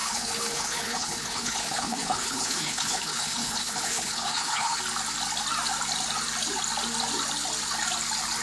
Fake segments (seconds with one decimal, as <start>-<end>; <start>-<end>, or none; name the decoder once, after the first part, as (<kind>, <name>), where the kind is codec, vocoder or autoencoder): 0.0-4.8 (codec, HILCodec)